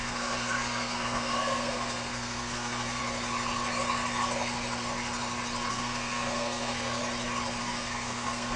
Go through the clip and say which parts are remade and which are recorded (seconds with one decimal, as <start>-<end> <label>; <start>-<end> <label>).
0.0-3.0 remade; 3.0-5.7 recorded; 5.7-7.0 remade; 7.0-7.6 recorded; 7.6-8.6 remade